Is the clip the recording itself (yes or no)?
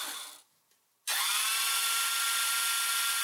yes